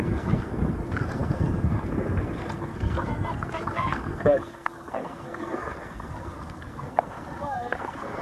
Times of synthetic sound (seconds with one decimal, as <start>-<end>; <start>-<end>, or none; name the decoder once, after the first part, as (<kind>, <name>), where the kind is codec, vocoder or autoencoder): 0.0-8.2 (codec, SNAC)